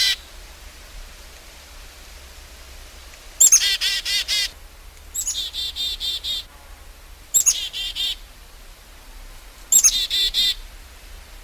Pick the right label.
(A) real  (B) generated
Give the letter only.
A